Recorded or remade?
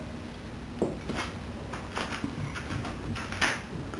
recorded